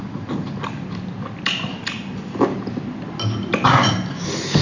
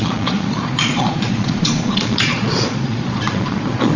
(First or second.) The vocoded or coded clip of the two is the second